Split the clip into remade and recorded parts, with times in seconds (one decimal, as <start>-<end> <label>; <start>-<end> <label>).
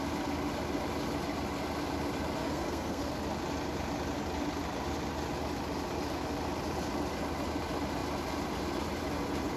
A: 0.0-2.4 recorded; 2.4-3.0 remade; 3.0-9.6 recorded